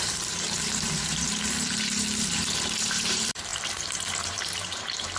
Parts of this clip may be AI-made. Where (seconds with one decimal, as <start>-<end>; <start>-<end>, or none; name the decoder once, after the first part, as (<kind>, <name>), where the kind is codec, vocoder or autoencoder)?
0.0-3.5 (vocoder, BigVGAN v2); 4.2-5.2